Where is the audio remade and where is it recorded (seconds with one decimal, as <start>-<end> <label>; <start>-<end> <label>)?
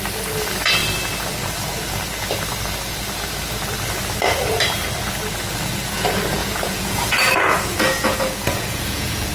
0.0-6.4 recorded; 6.4-9.3 remade